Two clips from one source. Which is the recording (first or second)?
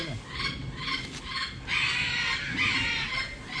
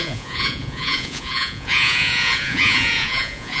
first